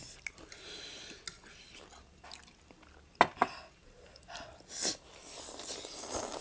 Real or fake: real